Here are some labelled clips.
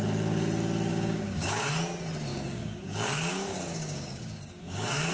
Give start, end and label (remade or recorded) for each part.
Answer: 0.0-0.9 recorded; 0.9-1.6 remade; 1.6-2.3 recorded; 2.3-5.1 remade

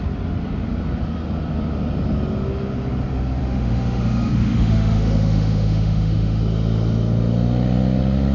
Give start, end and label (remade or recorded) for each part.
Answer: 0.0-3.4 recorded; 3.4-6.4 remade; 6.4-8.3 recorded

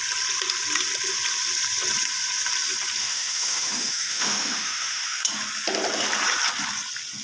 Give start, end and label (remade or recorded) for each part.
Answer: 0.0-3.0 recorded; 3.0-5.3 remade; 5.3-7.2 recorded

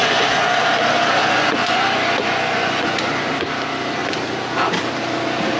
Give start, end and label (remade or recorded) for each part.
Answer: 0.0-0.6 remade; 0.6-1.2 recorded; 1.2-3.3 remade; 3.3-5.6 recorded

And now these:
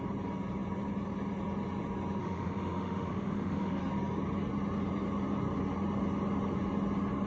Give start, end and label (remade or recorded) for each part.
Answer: 0.0-2.2 recorded; 2.2-3.8 remade; 3.8-7.3 recorded

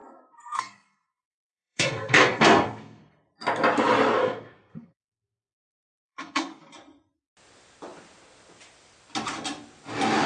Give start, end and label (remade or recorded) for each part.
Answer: 0.0-3.0 remade; 3.0-4.2 recorded; 4.2-6.6 remade; 6.6-10.3 recorded